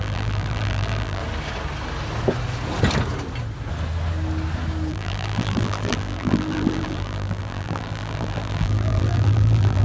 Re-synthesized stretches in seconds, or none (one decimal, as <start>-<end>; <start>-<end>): 0.0-1.2; 4.9-9.8